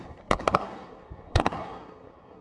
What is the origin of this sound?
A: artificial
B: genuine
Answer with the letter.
A